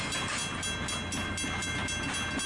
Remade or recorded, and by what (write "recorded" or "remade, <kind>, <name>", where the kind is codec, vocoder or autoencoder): recorded